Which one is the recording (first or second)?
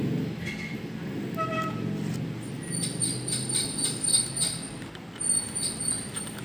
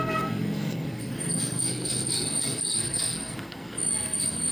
first